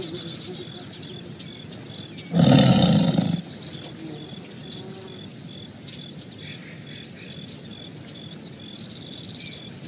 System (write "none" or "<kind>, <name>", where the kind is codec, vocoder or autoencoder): none